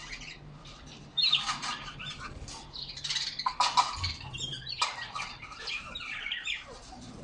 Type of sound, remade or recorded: remade